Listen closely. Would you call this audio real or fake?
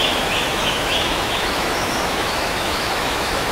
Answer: fake